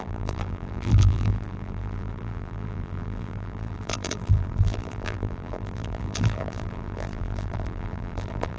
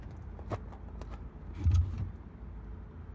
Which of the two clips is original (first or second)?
second